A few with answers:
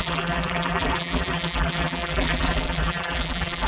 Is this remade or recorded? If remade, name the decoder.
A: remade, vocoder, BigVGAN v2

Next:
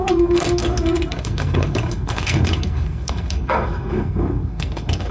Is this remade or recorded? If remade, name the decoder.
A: remade, codec, SNAC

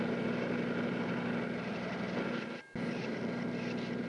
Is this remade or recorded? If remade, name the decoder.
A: recorded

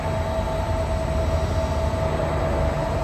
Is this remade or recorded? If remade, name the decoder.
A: recorded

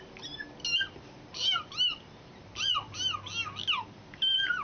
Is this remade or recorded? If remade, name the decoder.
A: recorded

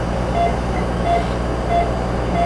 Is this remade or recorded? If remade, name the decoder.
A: recorded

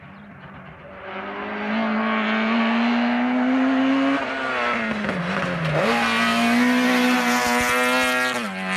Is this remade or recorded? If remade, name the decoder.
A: recorded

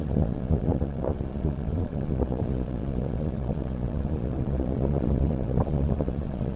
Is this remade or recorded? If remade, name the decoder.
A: remade, vocoder, Vocos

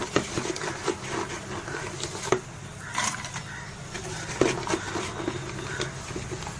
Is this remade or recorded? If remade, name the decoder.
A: recorded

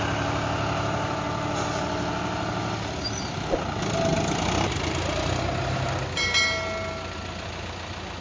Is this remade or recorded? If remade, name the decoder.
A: recorded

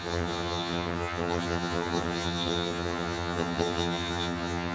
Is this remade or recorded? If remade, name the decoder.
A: remade, vocoder, HiFi-GAN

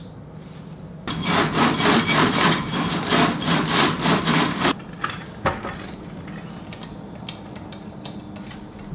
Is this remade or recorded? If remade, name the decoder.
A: recorded